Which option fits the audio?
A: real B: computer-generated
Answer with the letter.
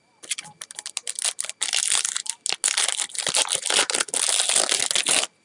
A